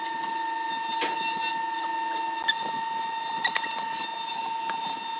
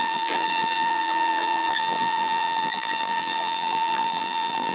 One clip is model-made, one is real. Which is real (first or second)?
first